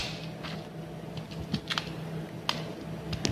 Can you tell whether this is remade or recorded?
recorded